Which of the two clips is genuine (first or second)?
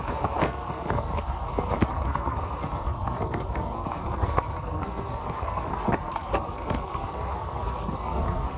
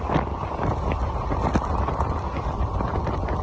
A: second